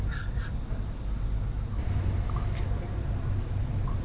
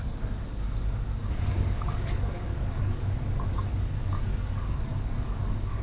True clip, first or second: first